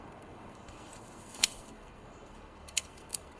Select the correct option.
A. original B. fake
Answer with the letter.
B